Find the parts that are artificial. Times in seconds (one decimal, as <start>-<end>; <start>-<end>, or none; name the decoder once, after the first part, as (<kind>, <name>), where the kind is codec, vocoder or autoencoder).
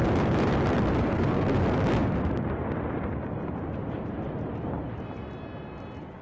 1.1-1.6 (codec, SNAC)